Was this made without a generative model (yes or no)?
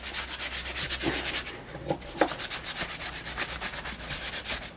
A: yes